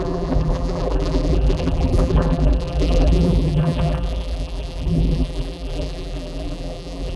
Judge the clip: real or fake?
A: fake